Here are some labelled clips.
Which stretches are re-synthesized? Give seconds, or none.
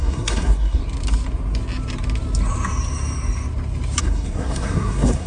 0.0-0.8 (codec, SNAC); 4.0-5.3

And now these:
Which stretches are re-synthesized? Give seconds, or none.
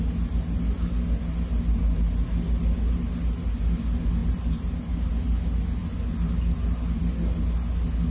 4.2-5.1 (vocoder, BigVGAN v2)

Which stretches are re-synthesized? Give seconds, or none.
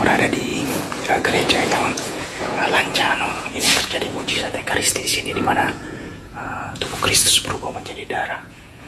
0.0-0.5 (vocoder, Vocos); 1.1-8.9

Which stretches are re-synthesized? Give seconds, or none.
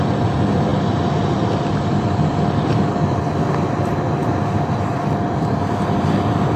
none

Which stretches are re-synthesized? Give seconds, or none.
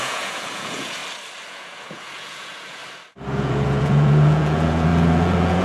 0.0-1.0 (vocoder, Vocos); 1.5-2.8; 3.4-5.6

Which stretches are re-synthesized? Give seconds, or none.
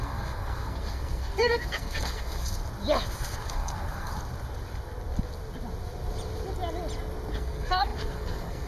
0.0-2.6 (codec, SNAC); 3.4-4.1; 7.3-8.7